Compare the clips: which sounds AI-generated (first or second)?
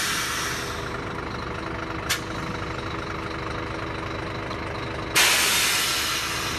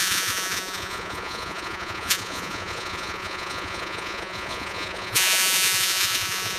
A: second